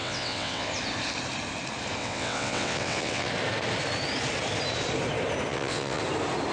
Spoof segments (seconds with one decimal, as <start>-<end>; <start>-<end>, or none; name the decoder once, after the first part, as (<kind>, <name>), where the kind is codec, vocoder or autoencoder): 0.0-0.7 (vocoder, WaveNeXt); 2.0-3.3; 5.5-6.0

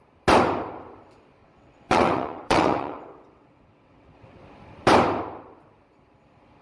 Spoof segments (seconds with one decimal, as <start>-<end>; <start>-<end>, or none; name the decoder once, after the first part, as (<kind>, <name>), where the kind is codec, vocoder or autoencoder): 1.4-4.4 (vocoder, WaveNeXt)

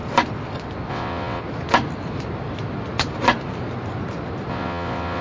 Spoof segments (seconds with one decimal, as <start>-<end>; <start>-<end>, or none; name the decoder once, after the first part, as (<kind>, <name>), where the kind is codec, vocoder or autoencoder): 0.9-1.4 (vocoder, WaveNeXt); 4.5-5.2

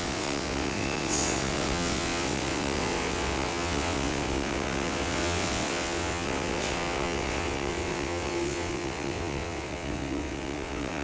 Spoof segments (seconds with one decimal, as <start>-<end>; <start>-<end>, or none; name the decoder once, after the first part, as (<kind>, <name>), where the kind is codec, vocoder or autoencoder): 0.0-11.0 (vocoder, WaveNeXt)

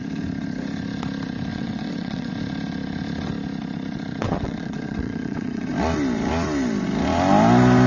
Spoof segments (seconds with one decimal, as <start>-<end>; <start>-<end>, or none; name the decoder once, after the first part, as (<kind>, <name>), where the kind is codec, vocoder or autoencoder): 1.5-2.3 (vocoder, WaveNeXt); 4.2-5.7

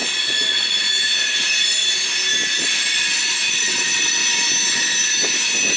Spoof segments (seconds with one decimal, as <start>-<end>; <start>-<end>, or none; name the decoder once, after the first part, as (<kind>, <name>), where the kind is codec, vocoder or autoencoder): 3.5-4.2 (vocoder, WaveNeXt)

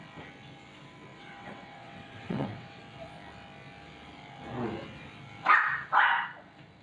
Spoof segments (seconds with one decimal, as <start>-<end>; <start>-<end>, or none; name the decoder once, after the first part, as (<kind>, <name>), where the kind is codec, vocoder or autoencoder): 1.1-2.8 (vocoder, WaveNeXt)

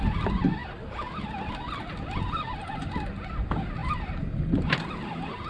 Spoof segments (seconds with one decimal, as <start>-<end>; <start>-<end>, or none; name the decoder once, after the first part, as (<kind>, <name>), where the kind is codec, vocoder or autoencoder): none